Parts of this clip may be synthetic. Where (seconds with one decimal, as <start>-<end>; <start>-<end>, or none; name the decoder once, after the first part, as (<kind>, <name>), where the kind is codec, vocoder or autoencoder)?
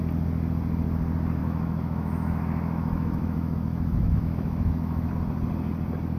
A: 1.4-5.1 (autoencoder, DAC-VAE)